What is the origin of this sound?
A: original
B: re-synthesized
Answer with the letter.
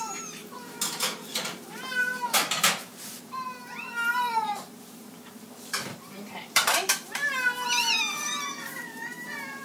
B